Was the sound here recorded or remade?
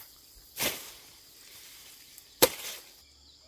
remade